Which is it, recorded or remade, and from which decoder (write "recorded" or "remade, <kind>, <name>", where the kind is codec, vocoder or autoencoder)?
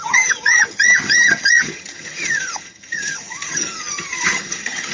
remade, vocoder, HiFi-GAN